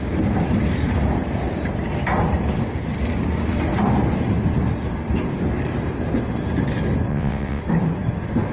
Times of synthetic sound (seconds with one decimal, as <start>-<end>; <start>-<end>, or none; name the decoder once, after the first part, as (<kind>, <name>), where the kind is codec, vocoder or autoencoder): 7.1-7.6 (vocoder, WaveNeXt)